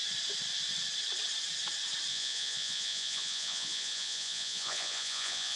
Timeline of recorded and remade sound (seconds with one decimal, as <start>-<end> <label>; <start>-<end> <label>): 0.0-2.1 recorded; 2.1-5.6 remade

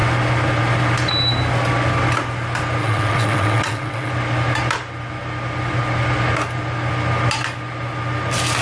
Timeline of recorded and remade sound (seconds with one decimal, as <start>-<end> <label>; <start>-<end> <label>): 0.0-2.8 recorded; 2.8-4.1 remade; 4.1-8.6 recorded

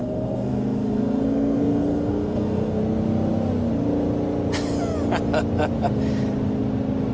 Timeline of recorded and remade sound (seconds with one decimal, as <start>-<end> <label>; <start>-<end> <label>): 0.0-2.8 remade; 2.8-7.1 recorded